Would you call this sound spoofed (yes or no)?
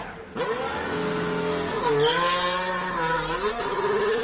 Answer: no